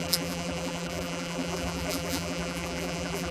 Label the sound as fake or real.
fake